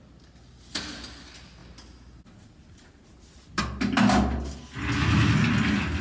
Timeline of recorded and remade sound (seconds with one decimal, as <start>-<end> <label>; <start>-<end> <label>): 0.0-6.0 recorded